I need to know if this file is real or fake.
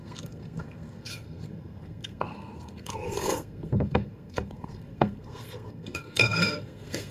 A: fake